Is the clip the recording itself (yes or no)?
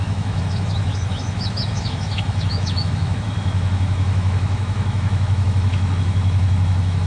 no